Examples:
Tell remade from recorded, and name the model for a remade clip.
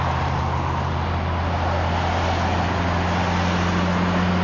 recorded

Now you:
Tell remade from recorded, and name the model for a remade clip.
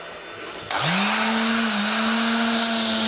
recorded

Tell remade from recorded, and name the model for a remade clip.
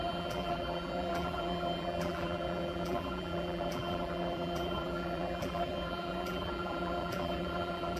remade, vocoder, BigVGAN v2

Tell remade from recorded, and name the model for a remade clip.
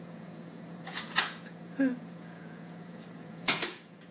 remade, vocoder, Vocos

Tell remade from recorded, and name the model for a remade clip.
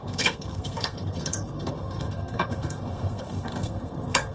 remade, codec, SNAC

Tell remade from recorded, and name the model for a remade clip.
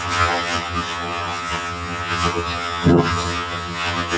remade, vocoder, HiFi-GAN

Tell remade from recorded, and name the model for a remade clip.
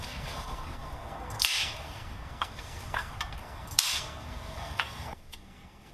remade, codec, SNAC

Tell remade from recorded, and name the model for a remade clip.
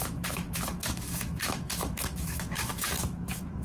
remade, autoencoder, DAC-VAE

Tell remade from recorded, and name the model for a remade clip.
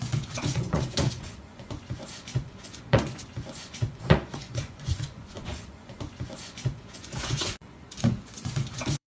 remade, vocoder, Vocos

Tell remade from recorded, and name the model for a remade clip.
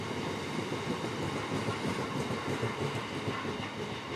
recorded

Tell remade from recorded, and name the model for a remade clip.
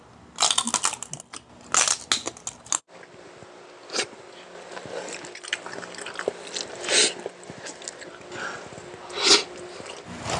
recorded